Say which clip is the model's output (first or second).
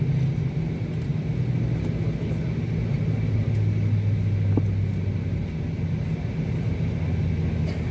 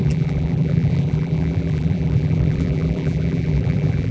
second